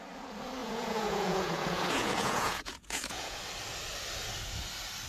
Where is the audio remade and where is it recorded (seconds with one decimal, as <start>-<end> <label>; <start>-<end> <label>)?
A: 0.0-0.6 recorded; 0.6-3.4 remade; 3.4-5.1 recorded